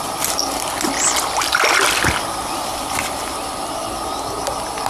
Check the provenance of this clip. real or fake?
real